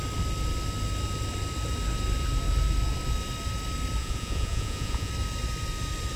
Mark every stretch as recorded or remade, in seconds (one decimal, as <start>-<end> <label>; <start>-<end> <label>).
0.0-4.0 recorded; 4.0-5.1 remade; 5.1-6.2 recorded